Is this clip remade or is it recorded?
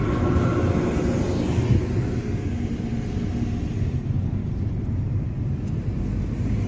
recorded